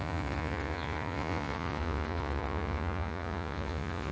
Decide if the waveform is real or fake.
fake